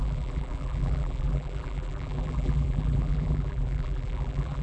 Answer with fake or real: fake